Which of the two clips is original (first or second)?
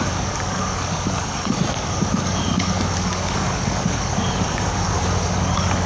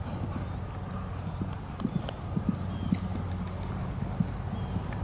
second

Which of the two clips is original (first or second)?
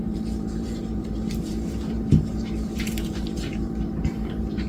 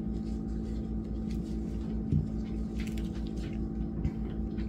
second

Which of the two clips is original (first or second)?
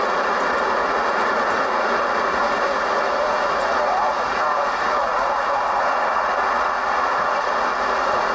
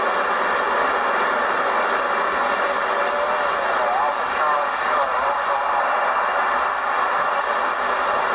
second